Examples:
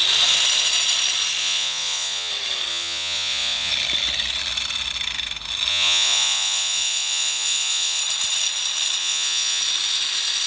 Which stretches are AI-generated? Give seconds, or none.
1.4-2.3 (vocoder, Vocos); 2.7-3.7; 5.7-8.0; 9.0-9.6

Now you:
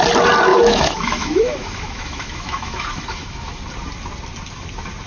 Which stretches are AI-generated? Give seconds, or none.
0.5-3.6 (autoencoder, DAC-VAE)

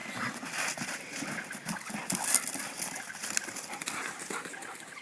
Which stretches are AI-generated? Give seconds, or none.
none

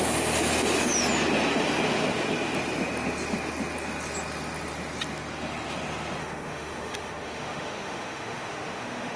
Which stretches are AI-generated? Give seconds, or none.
6.2-9.2 (autoencoder, DAC-VAE)

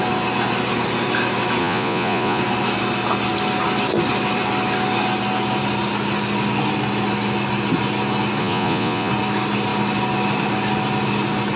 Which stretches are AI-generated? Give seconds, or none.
1.6-2.4 (vocoder, Vocos); 8.4-9.1

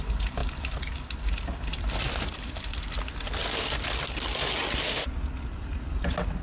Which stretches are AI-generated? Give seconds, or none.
none